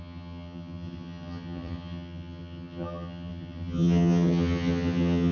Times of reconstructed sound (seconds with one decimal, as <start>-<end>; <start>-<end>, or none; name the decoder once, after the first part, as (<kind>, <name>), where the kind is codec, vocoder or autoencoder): 0.0-5.3 (vocoder, HiFi-GAN)